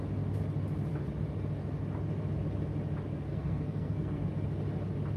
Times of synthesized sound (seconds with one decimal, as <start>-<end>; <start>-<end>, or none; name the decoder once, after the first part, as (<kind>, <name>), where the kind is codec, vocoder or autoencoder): 3.3-4.3 (codec, SNAC)